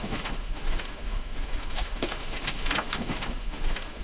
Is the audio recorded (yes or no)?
no